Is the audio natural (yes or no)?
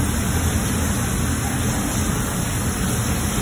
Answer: yes